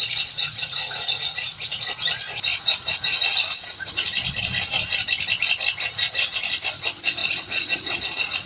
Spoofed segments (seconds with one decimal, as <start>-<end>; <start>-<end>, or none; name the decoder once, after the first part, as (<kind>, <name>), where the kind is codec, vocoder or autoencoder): 0.4-1.8 (vocoder, Vocos); 2.5-3.9; 7.2-8.5